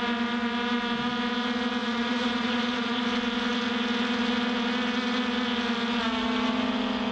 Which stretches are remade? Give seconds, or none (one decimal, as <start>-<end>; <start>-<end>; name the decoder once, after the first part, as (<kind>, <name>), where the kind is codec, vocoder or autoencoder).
1.8-3.0 (vocoder, Vocos)